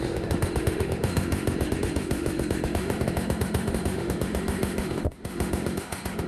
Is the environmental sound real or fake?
fake